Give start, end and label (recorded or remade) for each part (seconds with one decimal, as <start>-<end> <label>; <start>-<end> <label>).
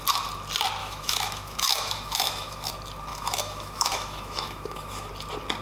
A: 0.0-0.8 recorded; 0.8-2.7 remade; 2.7-3.1 recorded; 3.1-5.1 remade; 5.1-5.6 recorded